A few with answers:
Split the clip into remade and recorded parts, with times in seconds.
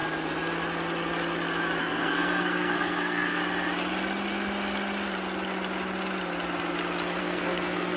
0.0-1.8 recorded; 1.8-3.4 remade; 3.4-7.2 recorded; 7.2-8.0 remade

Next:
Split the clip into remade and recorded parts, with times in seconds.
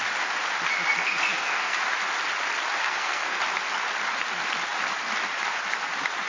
0.0-0.9 recorded; 0.9-1.8 remade; 1.8-2.8 recorded; 2.8-3.4 remade; 3.4-6.3 recorded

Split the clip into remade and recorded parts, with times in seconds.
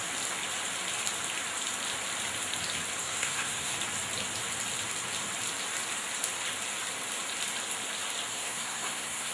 0.0-3.0 recorded; 3.0-3.7 remade; 3.7-8.3 recorded; 8.3-9.3 remade